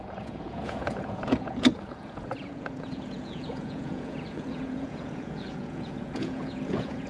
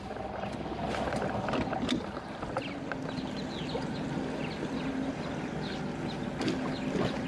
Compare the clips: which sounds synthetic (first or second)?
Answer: first